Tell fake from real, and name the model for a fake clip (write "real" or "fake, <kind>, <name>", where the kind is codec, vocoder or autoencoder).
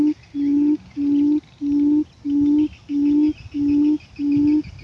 real